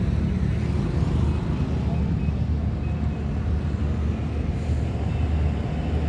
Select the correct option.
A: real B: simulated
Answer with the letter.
A